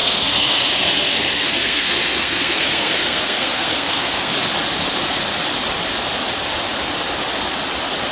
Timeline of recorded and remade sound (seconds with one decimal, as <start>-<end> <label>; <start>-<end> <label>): 0.0-4.3 remade; 4.3-8.1 recorded